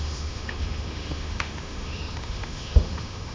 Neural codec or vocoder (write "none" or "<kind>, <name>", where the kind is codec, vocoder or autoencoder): autoencoder, DAC-VAE